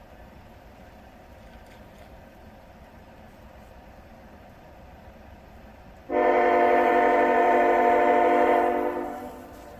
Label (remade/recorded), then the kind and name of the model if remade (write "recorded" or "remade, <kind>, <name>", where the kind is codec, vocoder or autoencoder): remade, vocoder, BigVGAN v2